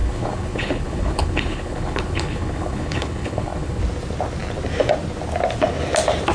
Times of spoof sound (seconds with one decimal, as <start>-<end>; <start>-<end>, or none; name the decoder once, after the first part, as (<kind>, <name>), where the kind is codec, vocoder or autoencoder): 0.0-3.8 (codec, HILCodec)